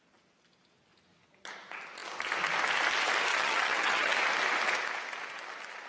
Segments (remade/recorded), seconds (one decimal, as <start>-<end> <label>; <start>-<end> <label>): 0.0-3.3 recorded; 3.3-4.1 remade; 4.1-5.9 recorded